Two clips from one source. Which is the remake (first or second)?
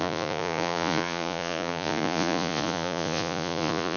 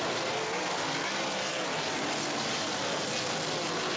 first